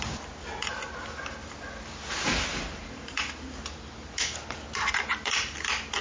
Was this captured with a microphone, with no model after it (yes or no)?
yes